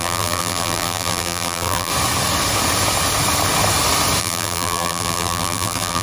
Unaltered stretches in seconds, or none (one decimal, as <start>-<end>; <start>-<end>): 1.9-4.2